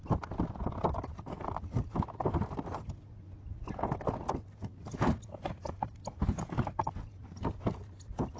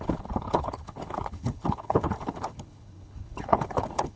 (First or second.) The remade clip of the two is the second